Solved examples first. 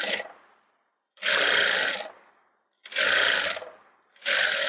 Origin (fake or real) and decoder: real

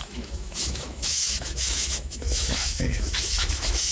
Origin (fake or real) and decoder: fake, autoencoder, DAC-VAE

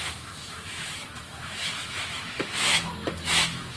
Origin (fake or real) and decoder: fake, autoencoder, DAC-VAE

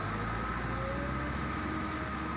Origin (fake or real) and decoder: real